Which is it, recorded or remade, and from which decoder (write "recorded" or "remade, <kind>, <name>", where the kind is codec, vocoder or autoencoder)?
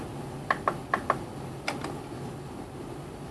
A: recorded